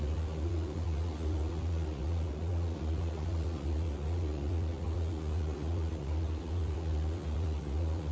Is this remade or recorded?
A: remade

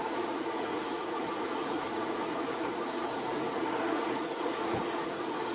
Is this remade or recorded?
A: remade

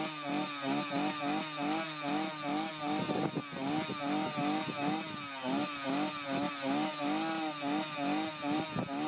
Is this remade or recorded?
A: recorded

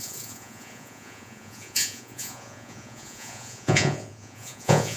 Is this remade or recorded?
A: remade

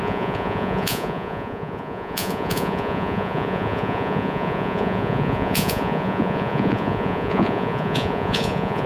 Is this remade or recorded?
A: remade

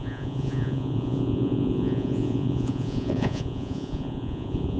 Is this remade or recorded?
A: remade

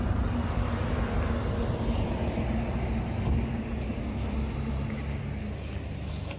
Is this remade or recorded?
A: recorded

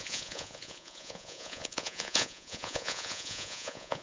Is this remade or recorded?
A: remade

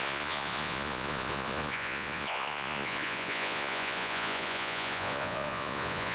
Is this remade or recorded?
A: remade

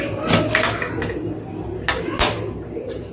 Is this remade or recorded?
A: recorded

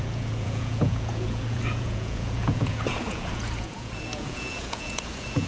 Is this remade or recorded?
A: remade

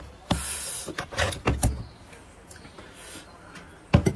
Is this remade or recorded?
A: recorded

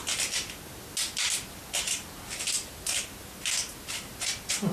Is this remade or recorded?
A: recorded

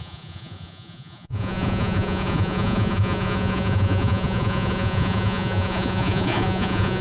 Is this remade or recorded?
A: remade